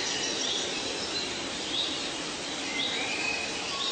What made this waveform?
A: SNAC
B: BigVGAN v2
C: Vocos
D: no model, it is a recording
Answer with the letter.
B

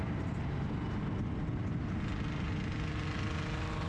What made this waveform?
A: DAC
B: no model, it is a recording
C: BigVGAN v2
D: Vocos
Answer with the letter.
B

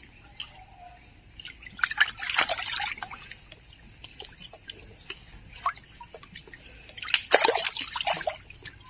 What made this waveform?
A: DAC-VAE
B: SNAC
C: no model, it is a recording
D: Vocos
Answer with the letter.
C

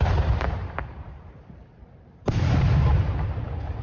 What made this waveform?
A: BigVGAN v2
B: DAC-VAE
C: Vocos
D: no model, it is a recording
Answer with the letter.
A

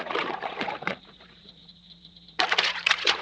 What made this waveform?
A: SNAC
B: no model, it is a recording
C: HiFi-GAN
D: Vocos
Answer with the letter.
D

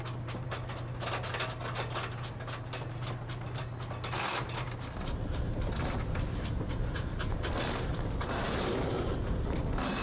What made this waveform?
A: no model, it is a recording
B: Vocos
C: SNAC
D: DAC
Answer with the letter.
A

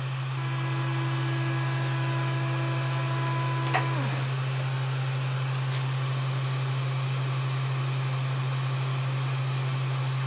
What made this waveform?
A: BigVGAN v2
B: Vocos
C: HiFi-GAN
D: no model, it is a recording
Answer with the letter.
D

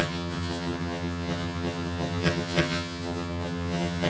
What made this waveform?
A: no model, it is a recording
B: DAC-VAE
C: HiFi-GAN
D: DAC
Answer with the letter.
C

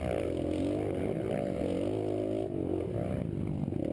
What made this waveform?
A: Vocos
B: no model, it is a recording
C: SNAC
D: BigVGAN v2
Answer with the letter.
B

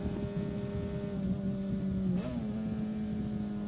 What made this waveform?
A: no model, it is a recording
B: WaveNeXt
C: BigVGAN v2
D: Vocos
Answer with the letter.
A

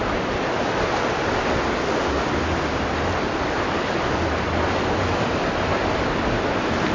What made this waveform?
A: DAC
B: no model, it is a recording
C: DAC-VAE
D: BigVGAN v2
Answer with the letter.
B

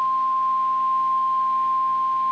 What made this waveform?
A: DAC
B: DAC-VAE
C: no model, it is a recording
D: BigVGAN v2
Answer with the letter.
A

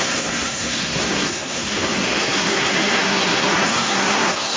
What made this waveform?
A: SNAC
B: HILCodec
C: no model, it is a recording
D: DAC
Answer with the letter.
A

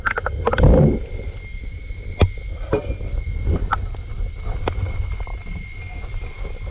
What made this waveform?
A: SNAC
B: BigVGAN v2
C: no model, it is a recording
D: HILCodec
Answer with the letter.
C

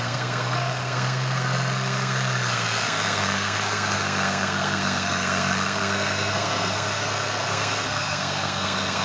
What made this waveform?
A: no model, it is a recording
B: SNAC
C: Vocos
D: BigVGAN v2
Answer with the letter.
B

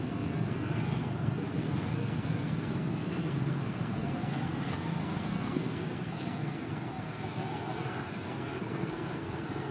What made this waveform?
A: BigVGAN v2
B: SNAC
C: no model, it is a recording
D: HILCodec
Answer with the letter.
B